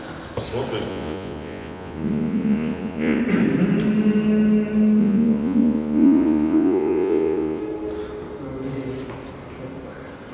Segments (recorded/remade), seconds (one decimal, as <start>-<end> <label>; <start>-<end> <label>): 0.0-0.9 recorded; 0.9-3.2 remade; 3.2-5.0 recorded; 5.0-7.6 remade; 7.6-10.3 recorded